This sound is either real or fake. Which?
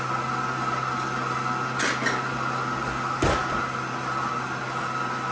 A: real